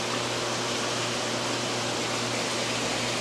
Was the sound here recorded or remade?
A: recorded